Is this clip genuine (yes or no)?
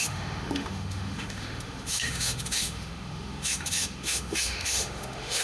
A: no